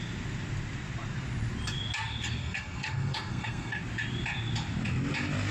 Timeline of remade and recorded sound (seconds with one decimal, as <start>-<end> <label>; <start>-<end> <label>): 0.0-2.4 recorded; 2.4-3.8 remade; 3.8-5.5 recorded